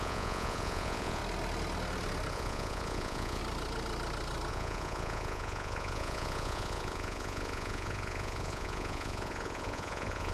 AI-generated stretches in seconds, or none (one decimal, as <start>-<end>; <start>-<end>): 0.0-1.2; 2.3-3.4; 4.5-10.3